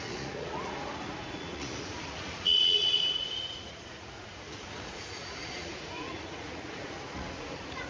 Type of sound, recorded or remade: remade